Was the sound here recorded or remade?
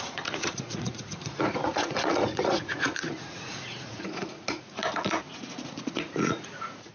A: remade